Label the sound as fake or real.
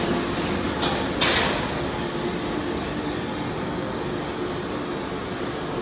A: real